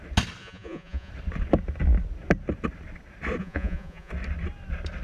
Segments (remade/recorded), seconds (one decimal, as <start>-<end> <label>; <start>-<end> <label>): 0.0-0.4 recorded; 0.4-1.1 remade; 1.1-3.4 recorded; 3.4-4.1 remade; 4.1-5.0 recorded